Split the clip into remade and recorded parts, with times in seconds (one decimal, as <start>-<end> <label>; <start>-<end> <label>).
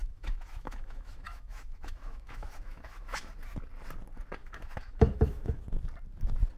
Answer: 0.0-3.3 remade; 3.3-4.4 recorded; 4.4-5.6 remade; 5.6-6.6 recorded